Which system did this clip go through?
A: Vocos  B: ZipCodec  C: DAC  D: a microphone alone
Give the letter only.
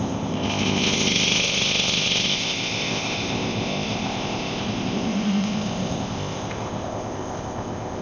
B